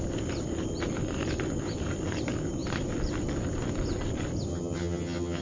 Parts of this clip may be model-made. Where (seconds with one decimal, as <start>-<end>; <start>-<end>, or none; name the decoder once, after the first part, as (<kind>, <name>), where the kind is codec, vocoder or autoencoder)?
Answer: 4.5-5.4 (vocoder, HiFi-GAN)